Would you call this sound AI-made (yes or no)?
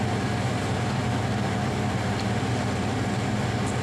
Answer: no